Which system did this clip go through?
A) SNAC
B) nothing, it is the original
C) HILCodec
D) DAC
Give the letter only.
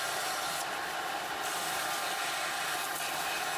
B